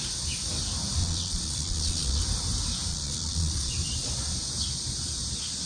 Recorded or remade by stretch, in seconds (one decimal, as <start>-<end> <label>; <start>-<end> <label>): 0.0-1.0 recorded; 1.0-2.2 remade; 2.2-2.9 recorded; 2.9-3.7 remade; 3.7-5.7 recorded